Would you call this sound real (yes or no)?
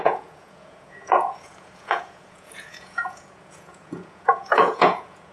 no